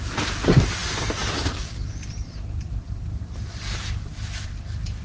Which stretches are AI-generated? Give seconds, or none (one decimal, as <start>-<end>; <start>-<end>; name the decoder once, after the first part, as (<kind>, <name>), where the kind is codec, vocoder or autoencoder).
none